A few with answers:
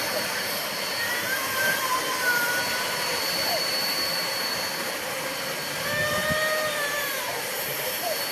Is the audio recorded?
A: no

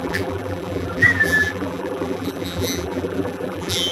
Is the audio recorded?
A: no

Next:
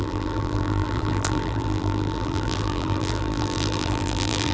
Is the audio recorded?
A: no